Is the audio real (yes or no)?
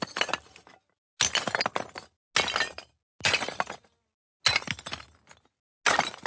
yes